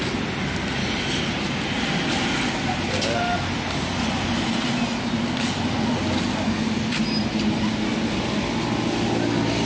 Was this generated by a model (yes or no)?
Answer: no